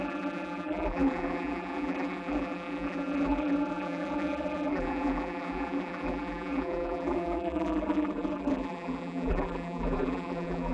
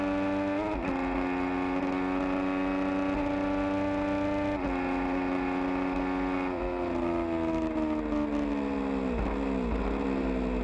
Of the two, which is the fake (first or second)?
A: first